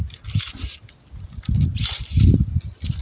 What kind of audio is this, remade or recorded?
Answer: recorded